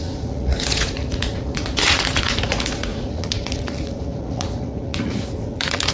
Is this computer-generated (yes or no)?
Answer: yes